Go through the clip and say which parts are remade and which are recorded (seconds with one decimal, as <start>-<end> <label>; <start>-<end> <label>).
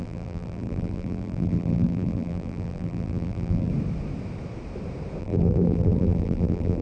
0.0-3.7 remade; 3.7-5.2 recorded; 5.2-6.8 remade